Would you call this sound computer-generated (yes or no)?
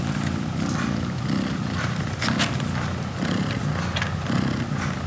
no